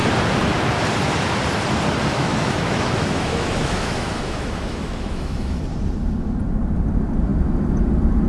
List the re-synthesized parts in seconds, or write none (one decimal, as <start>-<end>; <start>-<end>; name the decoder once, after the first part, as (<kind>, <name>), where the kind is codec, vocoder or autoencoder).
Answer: 2.1-5.6 (autoencoder, DAC-VAE)